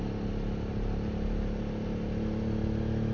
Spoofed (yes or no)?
no